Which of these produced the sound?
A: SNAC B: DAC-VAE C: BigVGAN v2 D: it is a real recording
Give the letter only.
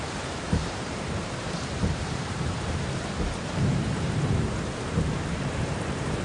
C